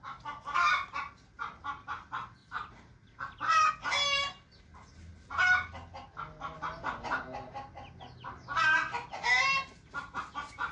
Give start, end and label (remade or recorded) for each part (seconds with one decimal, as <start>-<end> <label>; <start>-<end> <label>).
0.0-10.7 recorded